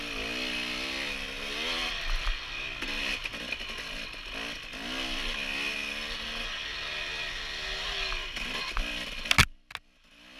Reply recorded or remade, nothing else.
recorded